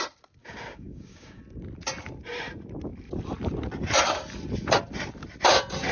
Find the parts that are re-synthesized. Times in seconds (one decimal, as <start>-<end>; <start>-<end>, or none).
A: 0.4-1.4